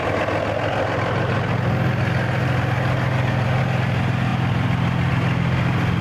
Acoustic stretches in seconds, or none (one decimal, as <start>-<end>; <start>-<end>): 0.0-6.0